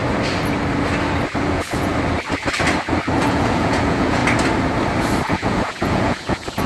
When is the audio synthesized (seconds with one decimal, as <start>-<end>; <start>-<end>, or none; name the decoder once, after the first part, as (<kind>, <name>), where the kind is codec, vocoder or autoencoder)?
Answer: 1.4-1.9 (vocoder, Vocos); 3.2-4.2; 5.3-6.7